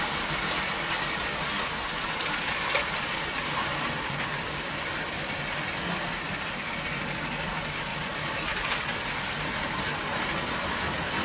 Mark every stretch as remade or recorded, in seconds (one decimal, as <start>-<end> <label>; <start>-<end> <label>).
0.0-11.2 recorded